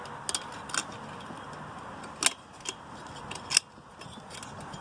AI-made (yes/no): no